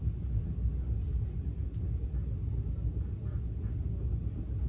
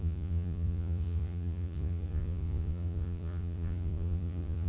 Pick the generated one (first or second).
second